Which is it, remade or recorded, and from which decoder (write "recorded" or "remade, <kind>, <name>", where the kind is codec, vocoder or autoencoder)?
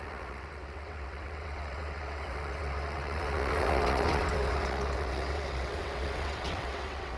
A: remade, vocoder, WaveNeXt